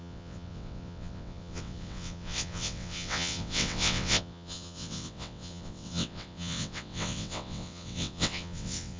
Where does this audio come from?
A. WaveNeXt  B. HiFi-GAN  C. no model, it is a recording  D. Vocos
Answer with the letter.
A